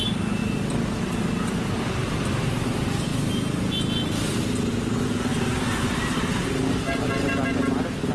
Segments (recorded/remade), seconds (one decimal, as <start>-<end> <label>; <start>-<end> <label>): 0.0-8.1 recorded